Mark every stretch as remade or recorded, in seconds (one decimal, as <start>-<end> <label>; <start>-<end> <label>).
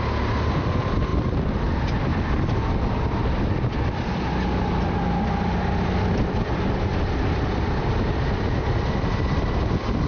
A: 0.0-10.1 recorded